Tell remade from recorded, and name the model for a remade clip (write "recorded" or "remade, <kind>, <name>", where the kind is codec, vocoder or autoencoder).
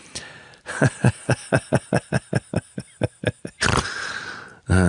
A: recorded